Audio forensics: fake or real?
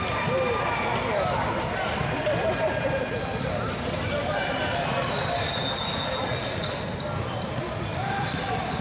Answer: real